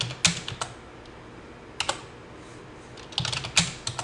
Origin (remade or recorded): recorded